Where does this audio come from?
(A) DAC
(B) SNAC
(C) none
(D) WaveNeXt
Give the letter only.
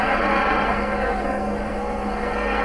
B